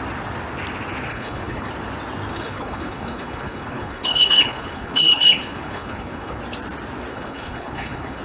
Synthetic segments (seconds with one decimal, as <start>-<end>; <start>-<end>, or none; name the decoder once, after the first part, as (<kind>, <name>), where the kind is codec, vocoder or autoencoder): 1.1-1.7 (codec, HILCodec); 2.3-6.4; 7.1-8.2